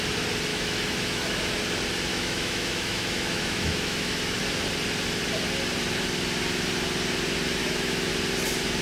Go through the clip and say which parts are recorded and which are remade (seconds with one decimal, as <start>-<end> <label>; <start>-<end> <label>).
0.0-0.5 recorded; 0.5-1.6 remade; 1.6-2.1 recorded; 2.1-4.4 remade; 4.4-7.6 recorded; 7.6-8.1 remade; 8.1-8.8 recorded